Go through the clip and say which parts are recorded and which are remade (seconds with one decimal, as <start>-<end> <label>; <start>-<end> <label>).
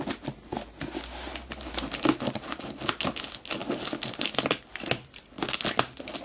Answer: 0.0-3.6 recorded; 3.6-5.2 remade; 5.2-6.2 recorded